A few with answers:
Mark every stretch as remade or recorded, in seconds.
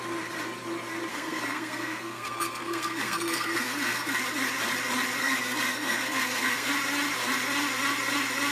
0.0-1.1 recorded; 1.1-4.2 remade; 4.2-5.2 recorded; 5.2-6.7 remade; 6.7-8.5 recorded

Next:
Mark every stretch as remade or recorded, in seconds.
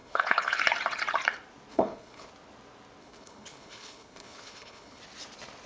0.0-0.6 remade; 0.6-1.7 recorded; 1.7-2.3 remade; 2.3-3.0 recorded; 3.0-5.0 remade; 5.0-5.7 recorded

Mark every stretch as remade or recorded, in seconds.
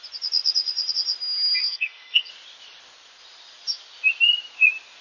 0.0-1.6 recorded; 1.6-2.3 remade; 2.3-5.0 recorded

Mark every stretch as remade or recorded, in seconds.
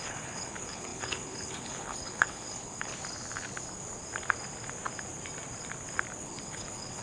0.0-2.9 remade; 2.9-6.2 recorded; 6.2-7.0 remade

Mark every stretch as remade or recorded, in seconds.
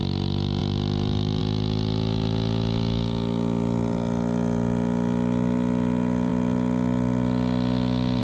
0.0-0.6 recorded; 0.6-1.4 remade; 1.4-8.2 recorded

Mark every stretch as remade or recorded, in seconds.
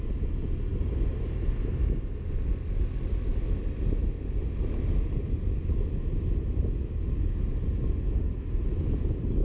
0.0-0.7 recorded; 0.7-1.8 remade; 1.8-9.4 recorded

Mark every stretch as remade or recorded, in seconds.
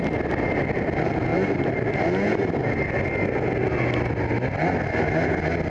0.0-1.3 recorded; 1.3-1.9 remade; 1.9-5.7 recorded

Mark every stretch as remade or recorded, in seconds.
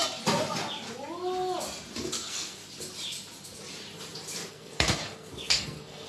0.0-2.0 recorded; 2.0-2.6 remade; 2.6-4.5 recorded; 4.5-6.1 remade